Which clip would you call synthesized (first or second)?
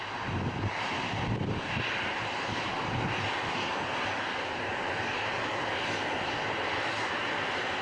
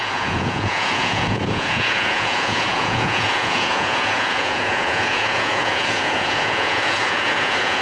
second